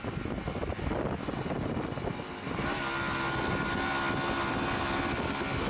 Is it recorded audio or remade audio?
recorded